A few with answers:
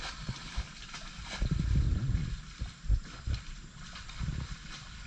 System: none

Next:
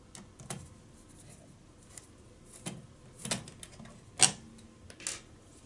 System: none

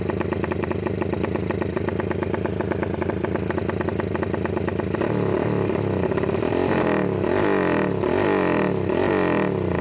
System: none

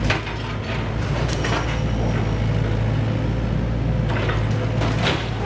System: none